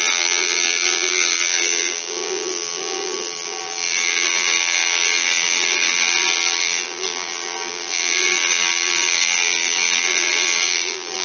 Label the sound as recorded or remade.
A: remade